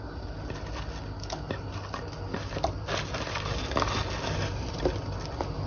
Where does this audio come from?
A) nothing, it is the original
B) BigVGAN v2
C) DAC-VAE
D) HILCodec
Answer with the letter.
A